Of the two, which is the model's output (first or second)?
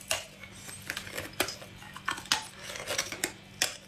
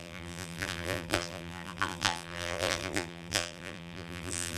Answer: second